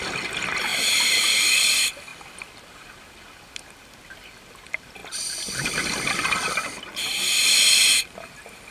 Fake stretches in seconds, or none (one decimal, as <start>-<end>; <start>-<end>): 0.7-1.4